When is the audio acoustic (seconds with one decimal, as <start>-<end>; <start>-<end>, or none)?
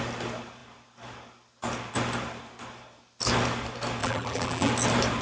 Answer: 0.0-4.0; 4.7-5.2